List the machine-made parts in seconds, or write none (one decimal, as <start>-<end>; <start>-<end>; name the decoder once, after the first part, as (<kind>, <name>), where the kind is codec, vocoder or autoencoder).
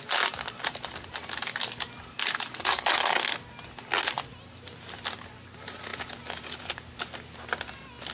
none